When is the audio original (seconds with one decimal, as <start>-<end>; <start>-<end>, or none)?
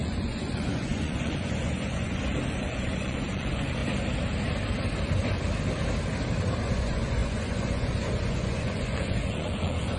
3.8-6.6